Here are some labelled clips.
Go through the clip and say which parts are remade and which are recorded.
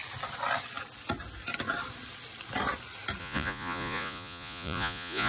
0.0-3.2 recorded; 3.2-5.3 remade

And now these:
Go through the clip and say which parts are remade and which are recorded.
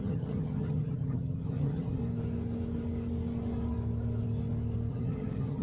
0.0-2.0 remade; 2.0-4.9 recorded; 4.9-5.6 remade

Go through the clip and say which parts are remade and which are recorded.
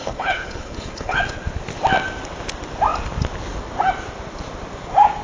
0.0-1.2 remade; 1.2-5.2 recorded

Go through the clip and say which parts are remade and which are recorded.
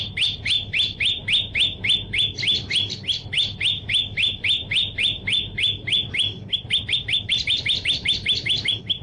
0.0-1.2 remade; 1.2-2.2 recorded; 2.2-9.0 remade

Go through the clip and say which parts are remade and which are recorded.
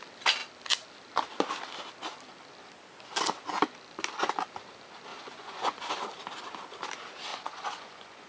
0.0-5.1 recorded; 5.1-5.9 remade; 5.9-7.3 recorded; 7.3-8.3 remade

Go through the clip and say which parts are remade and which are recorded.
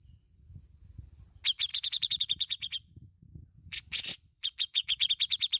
0.0-1.7 recorded; 1.7-5.1 remade; 5.1-5.6 recorded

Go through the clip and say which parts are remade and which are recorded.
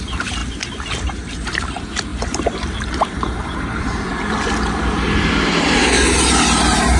0.0-0.4 remade; 0.4-1.3 recorded; 1.3-7.0 remade